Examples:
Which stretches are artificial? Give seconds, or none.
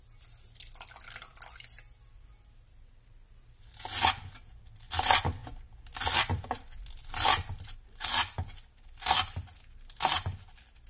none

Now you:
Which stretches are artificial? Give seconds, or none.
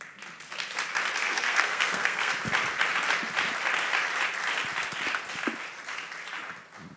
1.2-2.3 (codec, SNAC)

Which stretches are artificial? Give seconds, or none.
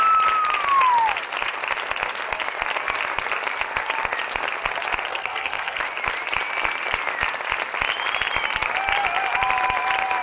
5.1-5.8 (codec, SNAC)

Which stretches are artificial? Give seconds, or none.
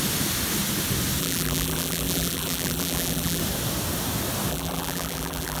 1.2-3.4 (vocoder, BigVGAN v2); 4.5-5.6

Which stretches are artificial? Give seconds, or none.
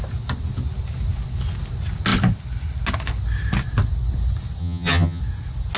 4.6-5.2 (vocoder, HiFi-GAN)